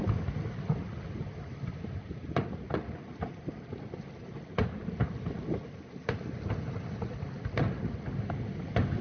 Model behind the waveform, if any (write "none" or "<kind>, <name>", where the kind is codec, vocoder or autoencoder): none